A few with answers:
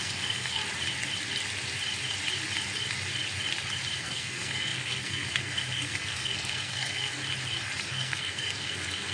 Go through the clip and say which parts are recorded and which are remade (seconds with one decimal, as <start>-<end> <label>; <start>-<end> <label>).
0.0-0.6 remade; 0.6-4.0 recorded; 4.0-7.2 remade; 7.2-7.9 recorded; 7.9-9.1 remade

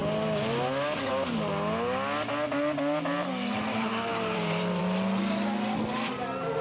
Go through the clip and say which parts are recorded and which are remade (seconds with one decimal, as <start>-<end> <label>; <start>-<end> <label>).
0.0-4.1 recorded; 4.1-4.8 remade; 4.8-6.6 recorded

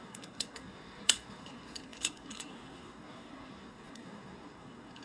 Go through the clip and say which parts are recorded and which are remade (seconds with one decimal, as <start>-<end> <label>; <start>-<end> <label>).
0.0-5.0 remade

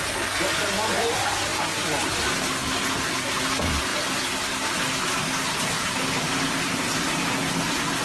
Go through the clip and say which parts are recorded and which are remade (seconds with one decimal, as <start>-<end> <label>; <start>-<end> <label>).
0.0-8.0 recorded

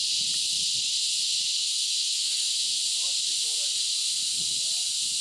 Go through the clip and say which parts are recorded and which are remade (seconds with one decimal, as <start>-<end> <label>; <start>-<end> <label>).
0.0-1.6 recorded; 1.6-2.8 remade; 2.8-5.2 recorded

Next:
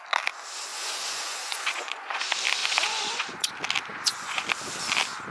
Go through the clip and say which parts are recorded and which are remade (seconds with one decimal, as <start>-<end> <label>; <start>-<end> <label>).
0.0-0.7 recorded; 0.7-2.2 remade; 2.2-2.6 recorded; 2.6-3.5 remade; 3.5-3.9 recorded; 3.9-4.5 remade; 4.5-5.3 recorded

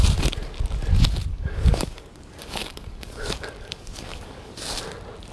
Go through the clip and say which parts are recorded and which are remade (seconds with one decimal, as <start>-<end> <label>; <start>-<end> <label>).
0.0-1.3 recorded; 1.3-4.5 remade; 4.5-5.3 recorded